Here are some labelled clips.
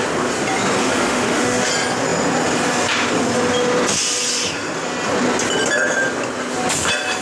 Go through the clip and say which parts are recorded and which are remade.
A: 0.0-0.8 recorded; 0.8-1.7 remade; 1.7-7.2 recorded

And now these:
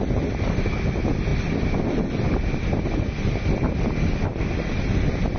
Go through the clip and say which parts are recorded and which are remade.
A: 0.0-5.4 recorded

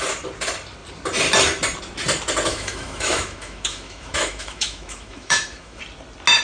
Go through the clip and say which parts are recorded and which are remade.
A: 0.0-2.5 recorded; 2.5-5.8 remade; 5.8-6.4 recorded

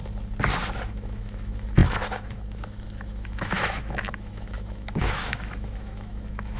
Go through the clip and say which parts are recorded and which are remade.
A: 0.0-0.9 recorded; 0.9-6.6 remade

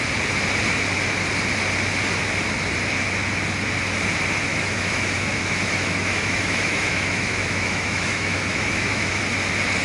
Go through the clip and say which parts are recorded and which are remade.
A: 0.0-4.5 recorded; 4.5-9.2 remade; 9.2-9.8 recorded

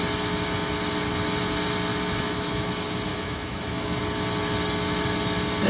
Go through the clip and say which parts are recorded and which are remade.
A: 0.0-1.9 recorded; 1.9-2.7 remade; 2.7-3.1 recorded; 3.1-4.0 remade; 4.0-5.7 recorded